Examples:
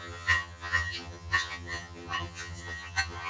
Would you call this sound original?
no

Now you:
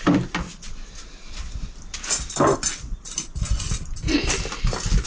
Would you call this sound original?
yes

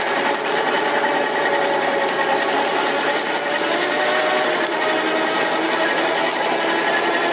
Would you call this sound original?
yes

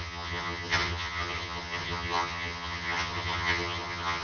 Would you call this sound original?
no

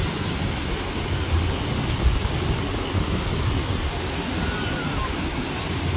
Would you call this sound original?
yes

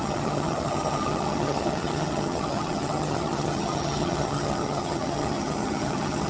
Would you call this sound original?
no